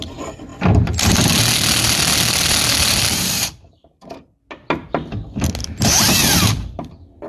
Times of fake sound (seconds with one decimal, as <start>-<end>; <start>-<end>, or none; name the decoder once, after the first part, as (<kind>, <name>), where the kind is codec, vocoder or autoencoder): 0.5-4.4 (vocoder, BigVGAN v2); 5.6-7.3

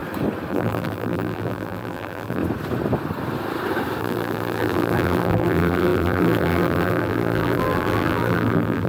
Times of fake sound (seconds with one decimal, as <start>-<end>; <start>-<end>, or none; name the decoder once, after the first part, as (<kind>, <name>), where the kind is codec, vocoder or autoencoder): 0.5-2.4 (vocoder, BigVGAN v2); 4.0-8.9

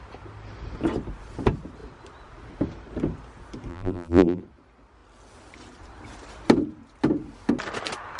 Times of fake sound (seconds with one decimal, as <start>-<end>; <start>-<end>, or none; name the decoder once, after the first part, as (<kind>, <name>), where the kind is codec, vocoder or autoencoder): 3.7-4.4 (vocoder, BigVGAN v2)

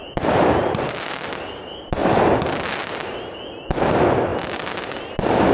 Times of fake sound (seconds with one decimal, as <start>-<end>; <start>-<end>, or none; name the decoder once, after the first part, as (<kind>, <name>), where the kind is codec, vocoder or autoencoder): 0.0-1.1 (vocoder, BigVGAN v2)

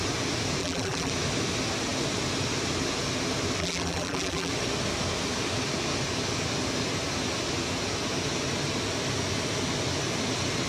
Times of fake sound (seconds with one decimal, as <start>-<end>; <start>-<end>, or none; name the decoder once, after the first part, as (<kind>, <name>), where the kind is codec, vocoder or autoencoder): 0.6-1.1 (vocoder, BigVGAN v2); 3.6-4.5

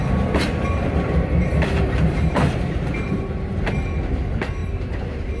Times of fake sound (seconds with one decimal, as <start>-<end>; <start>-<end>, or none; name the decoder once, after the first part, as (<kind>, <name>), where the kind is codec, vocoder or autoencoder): 0.7-3.6 (vocoder, BigVGAN v2); 4.6-5.4